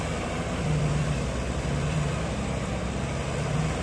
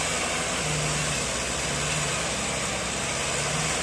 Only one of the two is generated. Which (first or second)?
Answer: first